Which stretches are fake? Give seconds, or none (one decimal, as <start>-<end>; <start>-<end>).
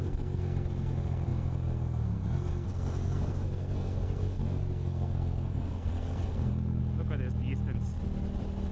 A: 0.0-6.8